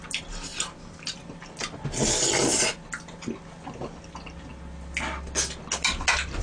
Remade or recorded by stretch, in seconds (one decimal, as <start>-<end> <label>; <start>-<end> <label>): 0.0-0.5 recorded; 0.5-1.2 remade; 1.2-6.4 recorded

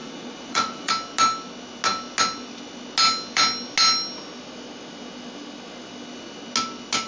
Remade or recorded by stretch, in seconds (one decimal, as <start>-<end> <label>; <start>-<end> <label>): 0.0-0.9 remade; 0.9-7.1 recorded

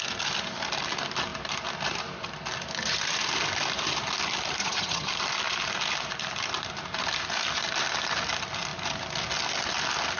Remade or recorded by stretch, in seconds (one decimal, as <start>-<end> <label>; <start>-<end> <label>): 0.0-4.6 recorded; 4.6-5.1 remade; 5.1-10.2 recorded

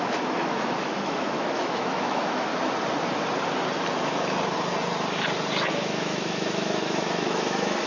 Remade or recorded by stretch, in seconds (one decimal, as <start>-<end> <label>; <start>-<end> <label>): 0.0-2.5 remade; 2.5-5.7 recorded; 5.7-7.9 remade

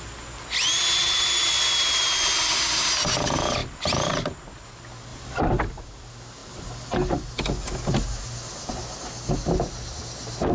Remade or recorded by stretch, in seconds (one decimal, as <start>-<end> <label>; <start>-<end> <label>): 0.0-1.0 recorded; 1.0-2.0 remade; 2.0-5.1 recorded; 5.1-5.9 remade; 5.9-10.5 recorded

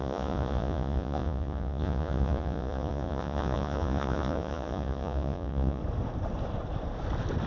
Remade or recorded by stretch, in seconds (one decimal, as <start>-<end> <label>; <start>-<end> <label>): 0.0-5.8 remade; 5.8-7.5 recorded

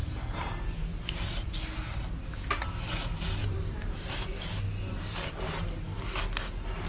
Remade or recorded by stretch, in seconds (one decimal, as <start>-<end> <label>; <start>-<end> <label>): 0.0-1.5 remade; 1.5-3.4 recorded; 3.4-4.6 remade; 4.6-6.9 recorded

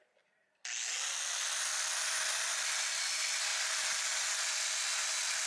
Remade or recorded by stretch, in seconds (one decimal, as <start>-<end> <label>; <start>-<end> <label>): 0.0-5.5 recorded